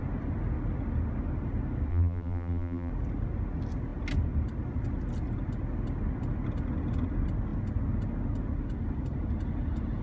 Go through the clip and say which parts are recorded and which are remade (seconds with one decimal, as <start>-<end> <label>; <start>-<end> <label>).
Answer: 0.0-1.9 recorded; 1.9-2.9 remade; 2.9-10.0 recorded